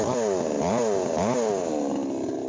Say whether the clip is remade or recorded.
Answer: recorded